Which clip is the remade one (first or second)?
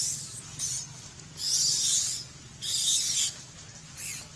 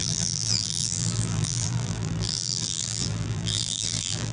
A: second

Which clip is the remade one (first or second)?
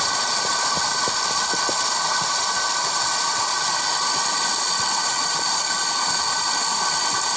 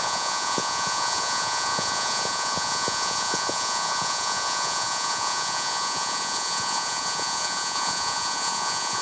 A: second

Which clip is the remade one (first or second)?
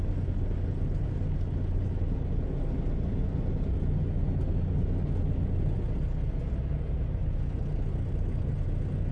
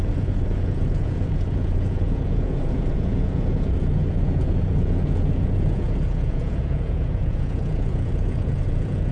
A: second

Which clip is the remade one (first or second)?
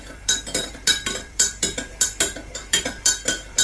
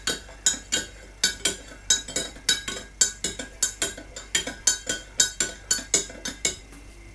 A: first